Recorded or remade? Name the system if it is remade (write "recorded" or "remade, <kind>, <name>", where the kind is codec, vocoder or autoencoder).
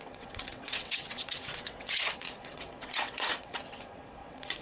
remade, vocoder, WaveNeXt